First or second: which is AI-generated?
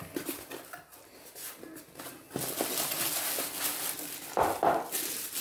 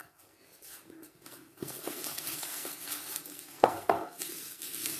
second